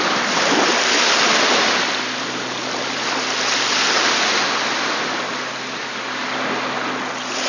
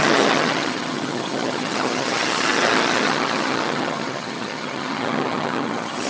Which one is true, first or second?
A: first